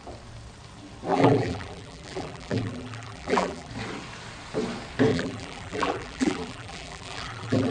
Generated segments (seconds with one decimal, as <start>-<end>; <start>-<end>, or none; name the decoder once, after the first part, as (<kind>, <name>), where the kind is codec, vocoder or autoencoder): 1.1-3.7 (vocoder, BigVGAN v2); 5.1-7.7